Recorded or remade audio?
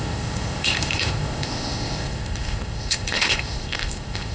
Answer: remade